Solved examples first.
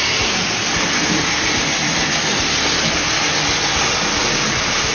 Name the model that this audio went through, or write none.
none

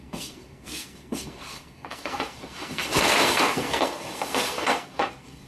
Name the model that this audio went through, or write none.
codec, SNAC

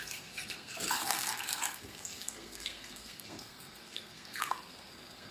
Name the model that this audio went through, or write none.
codec, SNAC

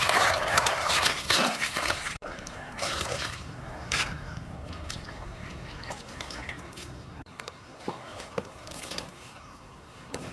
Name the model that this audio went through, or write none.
codec, SNAC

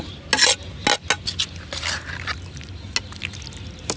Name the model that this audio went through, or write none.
none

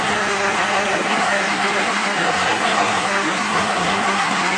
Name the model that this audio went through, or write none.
codec, SNAC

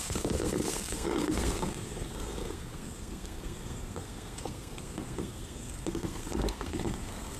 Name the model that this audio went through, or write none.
codec, SNAC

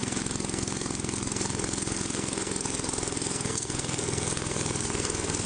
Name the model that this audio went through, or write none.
codec, SNAC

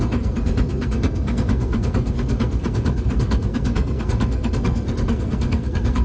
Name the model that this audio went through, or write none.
codec, SNAC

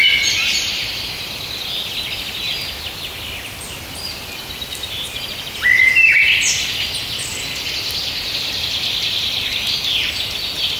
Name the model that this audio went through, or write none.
none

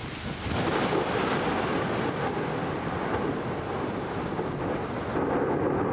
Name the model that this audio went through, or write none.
none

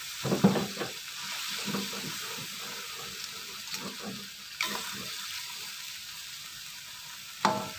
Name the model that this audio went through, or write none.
none